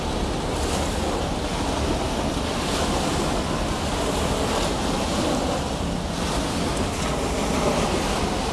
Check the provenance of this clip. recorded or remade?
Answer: recorded